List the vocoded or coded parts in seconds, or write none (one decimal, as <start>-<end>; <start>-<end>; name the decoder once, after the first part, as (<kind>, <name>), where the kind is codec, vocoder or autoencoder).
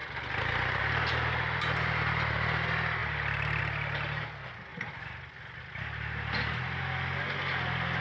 0.0-0.8 (vocoder, BigVGAN v2); 3.0-3.6; 4.7-5.6